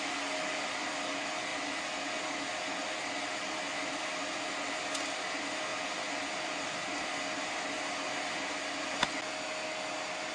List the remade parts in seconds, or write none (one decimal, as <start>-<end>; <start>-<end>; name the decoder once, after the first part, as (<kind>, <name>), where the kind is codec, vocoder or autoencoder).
none